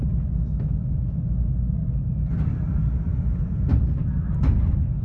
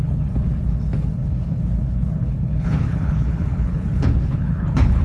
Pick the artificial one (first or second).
second